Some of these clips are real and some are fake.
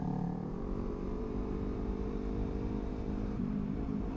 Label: fake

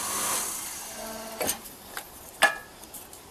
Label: real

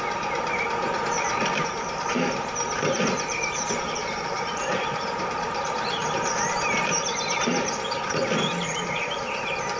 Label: fake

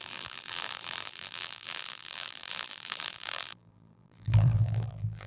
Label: fake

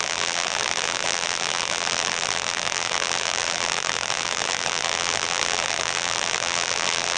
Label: fake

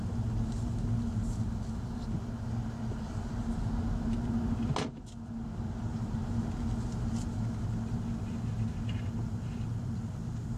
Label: real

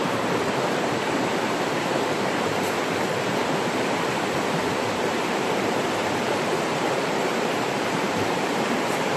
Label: fake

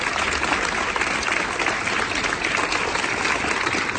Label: real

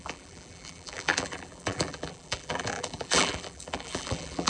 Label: fake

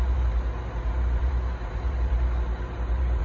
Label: fake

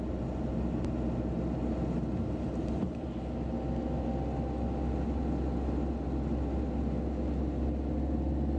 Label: real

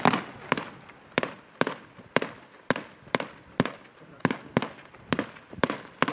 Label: fake